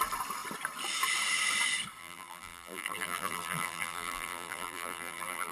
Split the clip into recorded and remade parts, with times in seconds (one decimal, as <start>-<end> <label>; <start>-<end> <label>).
0.0-2.0 recorded; 2.0-5.5 remade